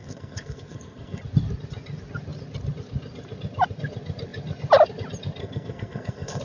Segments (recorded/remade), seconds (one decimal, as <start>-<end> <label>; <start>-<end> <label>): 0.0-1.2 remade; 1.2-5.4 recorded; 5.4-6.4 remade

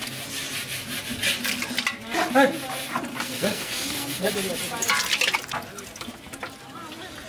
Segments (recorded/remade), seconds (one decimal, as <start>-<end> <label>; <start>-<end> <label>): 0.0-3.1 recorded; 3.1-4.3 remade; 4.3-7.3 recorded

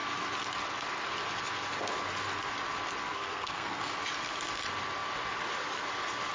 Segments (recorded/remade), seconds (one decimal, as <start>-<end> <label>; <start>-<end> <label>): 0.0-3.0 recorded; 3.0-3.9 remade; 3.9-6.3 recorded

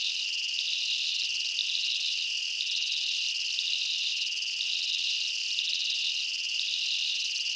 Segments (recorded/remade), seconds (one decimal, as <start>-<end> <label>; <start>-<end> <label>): 0.0-7.6 recorded